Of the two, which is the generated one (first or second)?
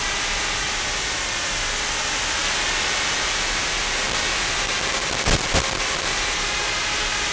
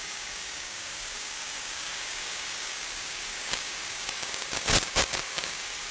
second